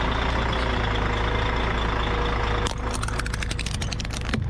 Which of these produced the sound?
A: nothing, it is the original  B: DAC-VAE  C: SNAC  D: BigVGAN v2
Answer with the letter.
A